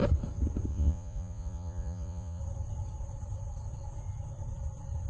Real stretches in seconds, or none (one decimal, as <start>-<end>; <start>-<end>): 0.0-0.7; 2.4-5.1